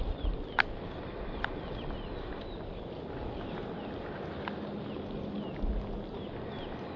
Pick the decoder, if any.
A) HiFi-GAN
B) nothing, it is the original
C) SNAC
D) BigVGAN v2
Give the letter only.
B